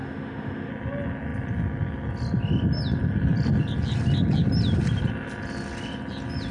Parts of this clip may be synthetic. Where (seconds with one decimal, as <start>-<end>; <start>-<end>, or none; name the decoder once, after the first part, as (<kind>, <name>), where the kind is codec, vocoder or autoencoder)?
0.0-0.7 (autoencoder, DAC-VAE)